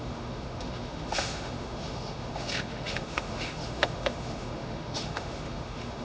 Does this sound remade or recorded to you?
remade